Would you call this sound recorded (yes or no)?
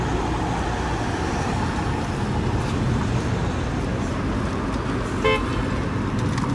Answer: yes